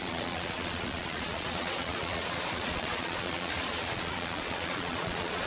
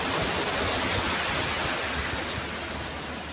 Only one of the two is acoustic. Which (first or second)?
second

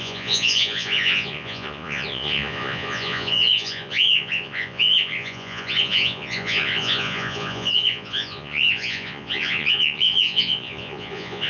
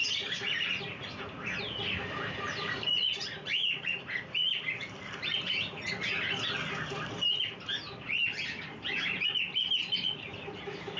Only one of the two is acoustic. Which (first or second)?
second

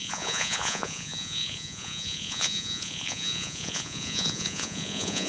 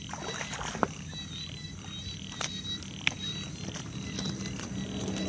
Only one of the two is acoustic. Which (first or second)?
second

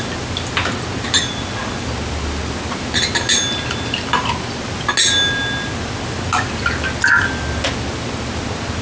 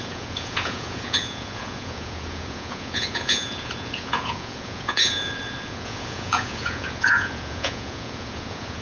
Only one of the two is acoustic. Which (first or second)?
first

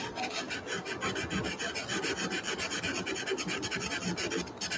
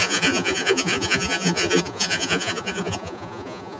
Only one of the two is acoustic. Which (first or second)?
first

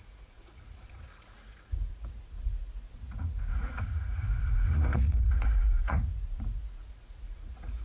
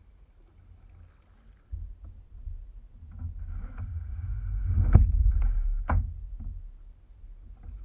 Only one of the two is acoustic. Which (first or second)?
second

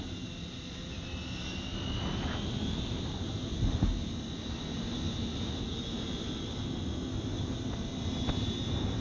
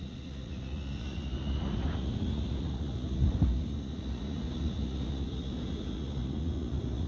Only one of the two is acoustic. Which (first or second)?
first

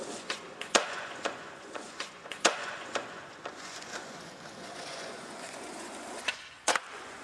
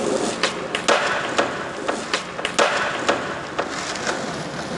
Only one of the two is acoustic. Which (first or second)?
second